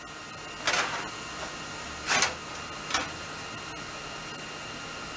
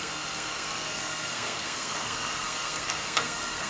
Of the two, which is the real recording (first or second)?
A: first